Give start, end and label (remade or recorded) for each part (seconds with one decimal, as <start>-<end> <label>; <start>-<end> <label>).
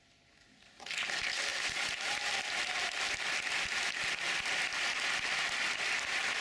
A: 0.0-6.4 recorded